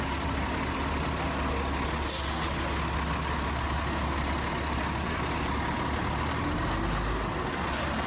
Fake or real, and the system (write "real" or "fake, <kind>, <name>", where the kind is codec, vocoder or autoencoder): real